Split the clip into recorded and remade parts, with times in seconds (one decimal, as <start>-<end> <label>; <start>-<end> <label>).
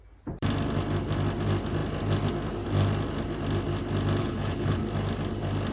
0.0-4.2 recorded; 4.2-4.8 remade; 4.8-5.7 recorded